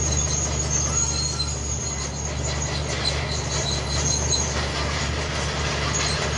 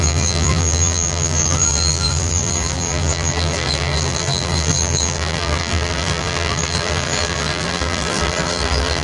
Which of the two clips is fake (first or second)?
second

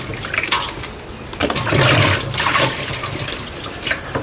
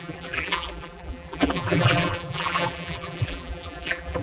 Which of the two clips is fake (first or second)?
second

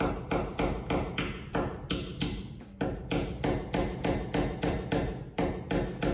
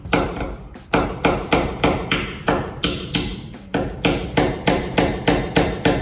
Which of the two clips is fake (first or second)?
second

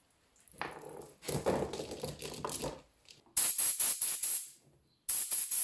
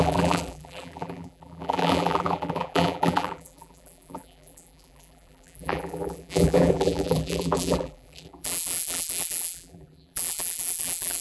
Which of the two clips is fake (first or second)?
second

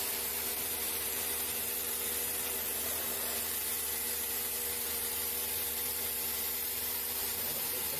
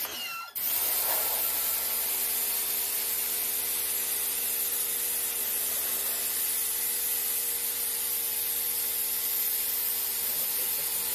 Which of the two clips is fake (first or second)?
first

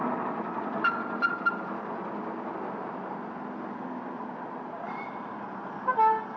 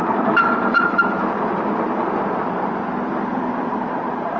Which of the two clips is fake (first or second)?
second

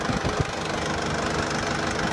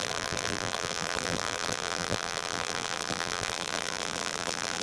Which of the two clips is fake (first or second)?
second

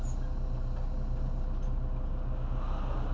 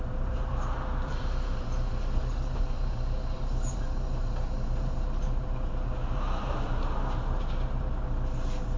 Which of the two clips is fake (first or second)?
second